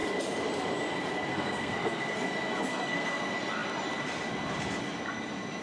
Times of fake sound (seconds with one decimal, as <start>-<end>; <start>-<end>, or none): 1.3-2.2; 2.7-3.2